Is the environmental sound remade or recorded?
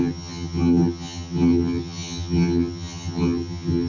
remade